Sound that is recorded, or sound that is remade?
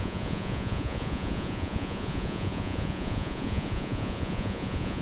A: remade